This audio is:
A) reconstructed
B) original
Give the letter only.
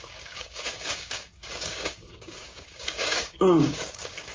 A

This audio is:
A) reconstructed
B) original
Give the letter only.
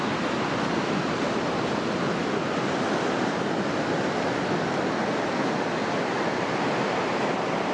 B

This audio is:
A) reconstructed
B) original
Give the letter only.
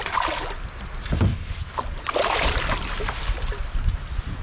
B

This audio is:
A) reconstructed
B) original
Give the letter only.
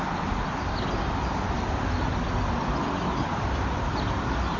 B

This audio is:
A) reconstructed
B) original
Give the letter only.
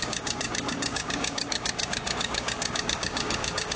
A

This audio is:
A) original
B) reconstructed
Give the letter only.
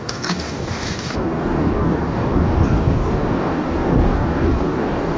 B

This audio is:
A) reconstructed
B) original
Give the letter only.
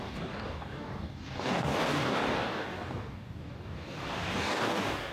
A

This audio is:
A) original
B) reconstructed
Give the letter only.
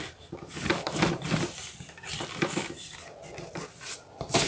A